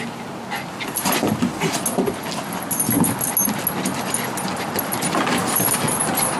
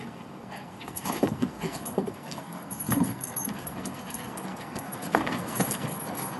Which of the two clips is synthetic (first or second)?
second